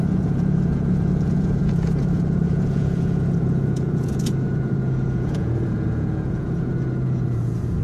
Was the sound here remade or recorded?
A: remade